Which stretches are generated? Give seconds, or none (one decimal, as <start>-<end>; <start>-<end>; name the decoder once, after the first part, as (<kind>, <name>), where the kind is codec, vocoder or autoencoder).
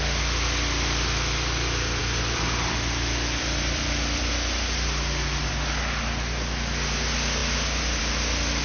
2.0-4.3 (vocoder, BigVGAN v2)